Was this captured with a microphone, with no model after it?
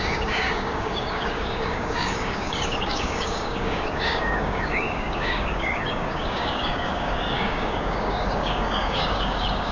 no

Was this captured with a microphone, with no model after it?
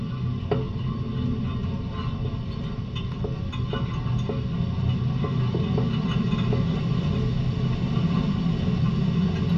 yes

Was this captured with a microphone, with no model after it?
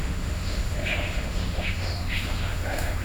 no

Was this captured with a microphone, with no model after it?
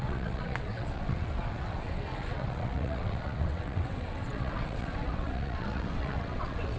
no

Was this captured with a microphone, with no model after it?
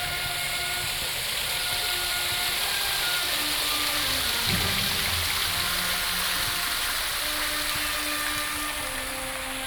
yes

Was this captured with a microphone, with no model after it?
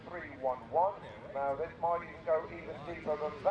yes